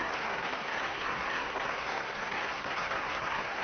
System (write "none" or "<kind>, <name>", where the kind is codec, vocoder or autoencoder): codec, SNAC